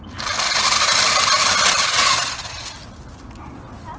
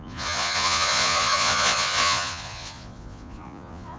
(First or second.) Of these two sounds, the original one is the first